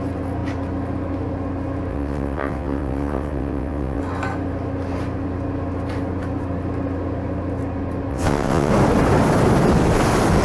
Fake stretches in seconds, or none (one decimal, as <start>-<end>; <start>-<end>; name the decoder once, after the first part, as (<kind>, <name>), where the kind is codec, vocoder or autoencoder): 1.9-4.0 (vocoder, WaveNeXt); 8.1-8.7

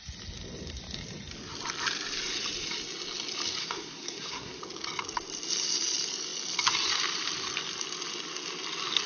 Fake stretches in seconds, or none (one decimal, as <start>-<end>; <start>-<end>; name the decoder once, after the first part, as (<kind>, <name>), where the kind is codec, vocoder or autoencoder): 3.6-4.6 (codec, SNAC)